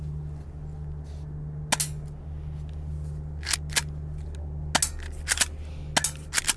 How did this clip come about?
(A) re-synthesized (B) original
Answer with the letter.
B